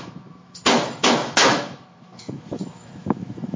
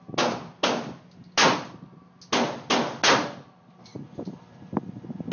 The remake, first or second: first